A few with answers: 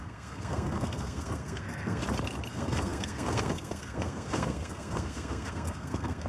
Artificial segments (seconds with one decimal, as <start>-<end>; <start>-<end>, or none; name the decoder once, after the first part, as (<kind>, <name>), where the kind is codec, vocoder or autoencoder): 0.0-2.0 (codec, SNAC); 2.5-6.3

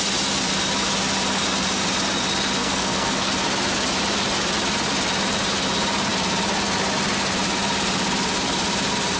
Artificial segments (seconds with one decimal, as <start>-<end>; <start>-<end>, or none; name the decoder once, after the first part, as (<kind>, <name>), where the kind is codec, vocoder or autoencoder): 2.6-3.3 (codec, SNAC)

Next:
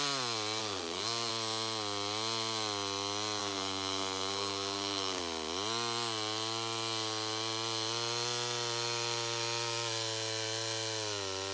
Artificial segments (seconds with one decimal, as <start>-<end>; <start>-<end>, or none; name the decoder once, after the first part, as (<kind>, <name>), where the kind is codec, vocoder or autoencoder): 0.6-1.3 (codec, SNAC); 3.4-5.2